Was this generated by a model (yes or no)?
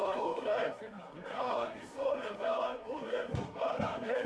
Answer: yes